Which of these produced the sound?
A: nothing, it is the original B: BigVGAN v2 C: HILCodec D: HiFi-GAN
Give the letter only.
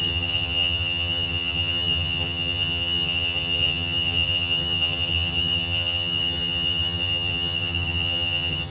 D